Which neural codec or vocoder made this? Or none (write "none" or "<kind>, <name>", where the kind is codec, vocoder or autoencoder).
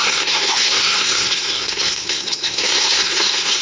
codec, SNAC